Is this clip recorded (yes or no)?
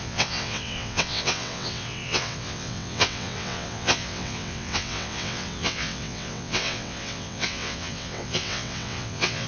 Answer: no